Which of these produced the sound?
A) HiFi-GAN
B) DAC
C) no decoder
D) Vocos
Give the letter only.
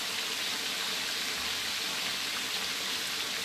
C